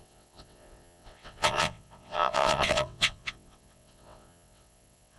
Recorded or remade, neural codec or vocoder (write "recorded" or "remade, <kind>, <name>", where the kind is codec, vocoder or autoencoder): remade, vocoder, WaveNeXt